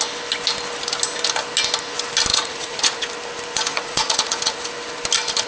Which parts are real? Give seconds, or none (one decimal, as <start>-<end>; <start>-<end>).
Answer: 0.0-2.3; 3.1-3.7; 4.4-5.5